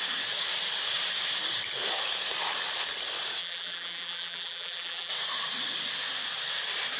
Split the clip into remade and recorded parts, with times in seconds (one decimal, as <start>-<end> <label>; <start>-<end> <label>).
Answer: 0.0-3.4 recorded; 3.4-5.1 remade; 5.1-7.0 recorded